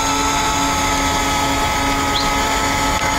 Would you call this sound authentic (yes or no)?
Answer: yes